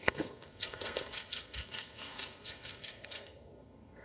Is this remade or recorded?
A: remade